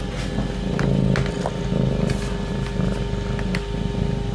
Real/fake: real